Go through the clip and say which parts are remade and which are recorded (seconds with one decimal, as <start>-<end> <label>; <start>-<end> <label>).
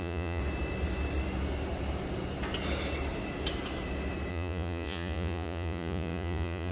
0.0-0.4 remade; 0.4-4.3 recorded; 4.3-6.7 remade